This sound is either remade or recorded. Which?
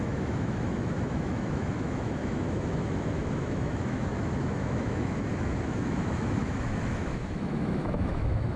remade